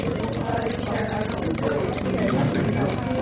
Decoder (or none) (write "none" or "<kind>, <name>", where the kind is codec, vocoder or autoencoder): none